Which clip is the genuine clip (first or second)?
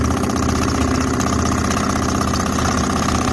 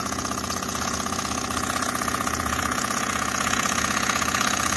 first